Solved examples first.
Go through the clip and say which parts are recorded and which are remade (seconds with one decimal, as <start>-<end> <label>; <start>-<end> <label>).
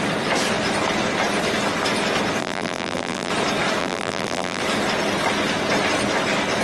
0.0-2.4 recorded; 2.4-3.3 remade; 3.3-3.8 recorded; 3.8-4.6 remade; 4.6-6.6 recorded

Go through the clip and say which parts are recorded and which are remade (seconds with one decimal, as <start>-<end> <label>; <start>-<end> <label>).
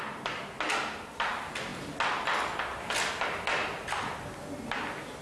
0.0-5.2 recorded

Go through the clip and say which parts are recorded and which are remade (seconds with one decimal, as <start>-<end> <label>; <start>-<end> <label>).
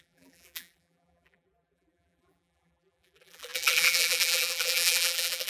0.0-5.5 remade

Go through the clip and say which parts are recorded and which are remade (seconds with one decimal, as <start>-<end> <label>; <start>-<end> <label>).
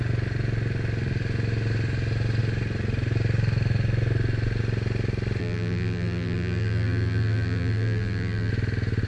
0.0-5.4 recorded; 5.4-8.5 remade; 8.5-9.1 recorded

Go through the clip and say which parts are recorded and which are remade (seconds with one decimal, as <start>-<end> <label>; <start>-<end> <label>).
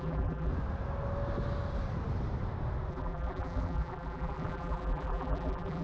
0.0-0.5 remade; 0.5-2.9 recorded; 2.9-5.8 remade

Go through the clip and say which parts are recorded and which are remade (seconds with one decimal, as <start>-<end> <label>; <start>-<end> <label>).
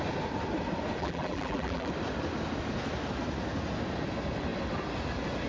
0.0-1.0 recorded; 1.0-1.9 remade; 1.9-5.5 recorded